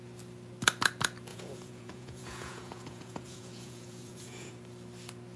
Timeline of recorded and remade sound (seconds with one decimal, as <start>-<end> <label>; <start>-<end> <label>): 0.0-1.3 recorded; 1.3-4.5 remade; 4.5-5.4 recorded